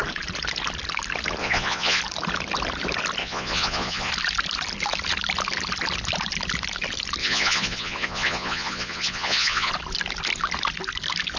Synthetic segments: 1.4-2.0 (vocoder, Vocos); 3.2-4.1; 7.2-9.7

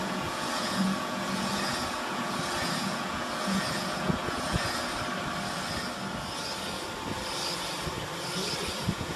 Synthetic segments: 0.0-4.9 (vocoder, Vocos); 8.7-9.2

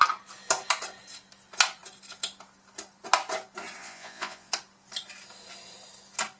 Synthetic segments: 3.8-4.5 (vocoder, Vocos)

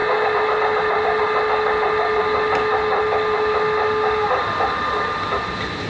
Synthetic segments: none

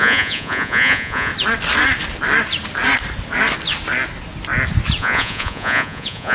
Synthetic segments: 0.0-1.3 (vocoder, Vocos); 5.0-6.3

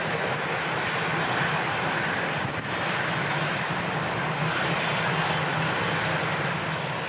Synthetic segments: none

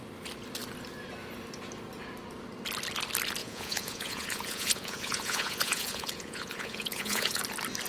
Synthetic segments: 3.4-7.4 (vocoder, Vocos)